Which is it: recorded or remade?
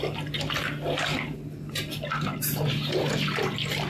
recorded